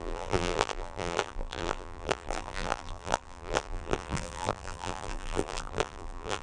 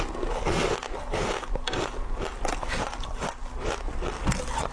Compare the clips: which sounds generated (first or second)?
first